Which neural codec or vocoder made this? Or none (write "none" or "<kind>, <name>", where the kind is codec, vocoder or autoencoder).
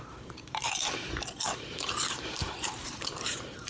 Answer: vocoder, BigVGAN v2